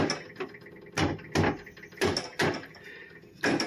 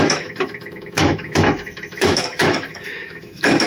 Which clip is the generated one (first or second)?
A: second